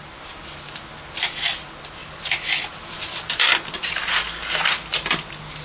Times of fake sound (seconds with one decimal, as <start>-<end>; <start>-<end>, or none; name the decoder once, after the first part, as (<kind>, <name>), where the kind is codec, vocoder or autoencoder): 2.0-3.5 (vocoder, BigVGAN v2)